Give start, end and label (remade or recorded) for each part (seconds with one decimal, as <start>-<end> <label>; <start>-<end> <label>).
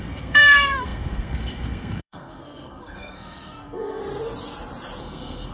0.0-4.0 remade; 4.0-5.0 recorded; 5.0-5.5 remade